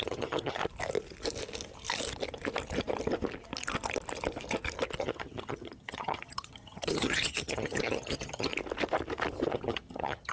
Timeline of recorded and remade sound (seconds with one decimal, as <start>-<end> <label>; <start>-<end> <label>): 0.0-0.6 remade; 0.6-5.0 recorded; 5.0-8.5 remade; 8.5-9.5 recorded; 9.5-10.3 remade